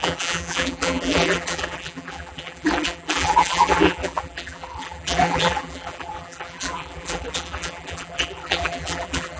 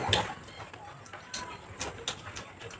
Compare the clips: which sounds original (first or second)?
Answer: second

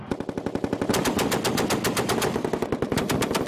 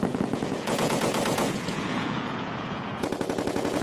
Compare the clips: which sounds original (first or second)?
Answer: first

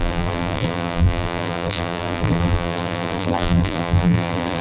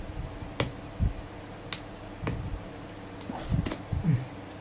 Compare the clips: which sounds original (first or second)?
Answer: second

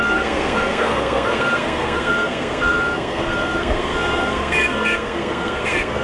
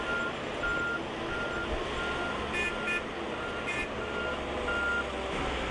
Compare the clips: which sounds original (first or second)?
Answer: second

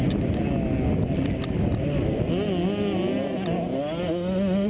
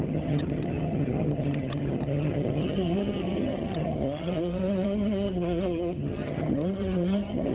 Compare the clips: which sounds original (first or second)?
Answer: first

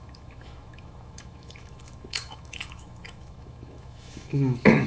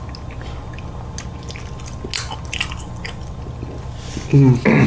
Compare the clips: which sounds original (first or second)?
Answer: second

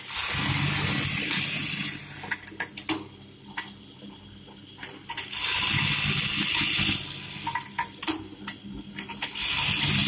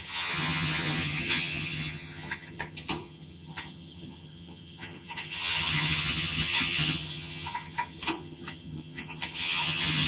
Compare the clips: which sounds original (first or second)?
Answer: first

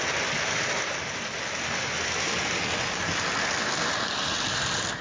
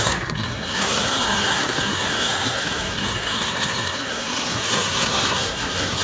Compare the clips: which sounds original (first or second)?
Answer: first